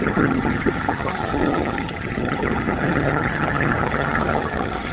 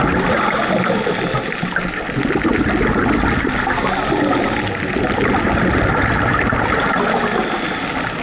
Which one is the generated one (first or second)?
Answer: first